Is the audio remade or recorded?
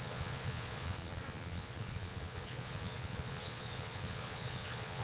remade